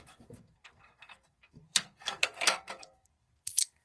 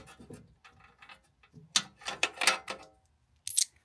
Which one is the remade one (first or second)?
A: first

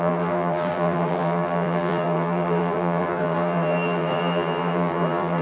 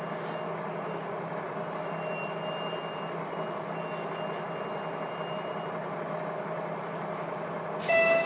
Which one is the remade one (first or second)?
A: first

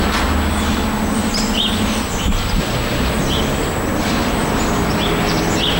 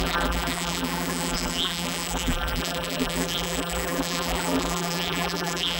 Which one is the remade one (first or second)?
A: second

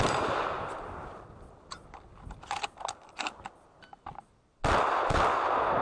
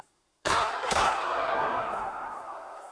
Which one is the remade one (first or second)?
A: second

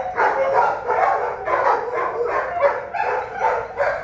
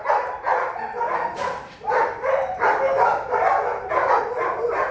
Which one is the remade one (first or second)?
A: second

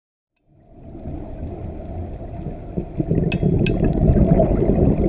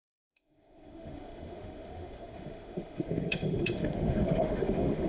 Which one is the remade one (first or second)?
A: second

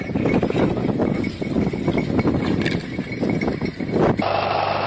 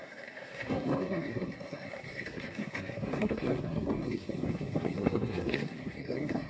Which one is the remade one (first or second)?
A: second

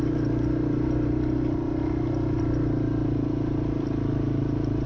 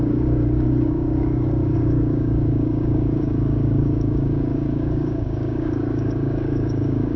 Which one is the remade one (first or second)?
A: second